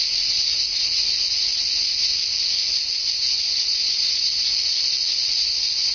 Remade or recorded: recorded